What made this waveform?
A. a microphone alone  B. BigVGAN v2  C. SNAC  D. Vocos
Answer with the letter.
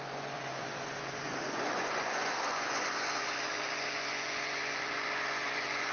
D